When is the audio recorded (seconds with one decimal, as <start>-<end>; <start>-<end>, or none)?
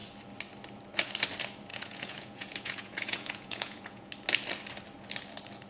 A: 0.0-1.7; 4.1-5.7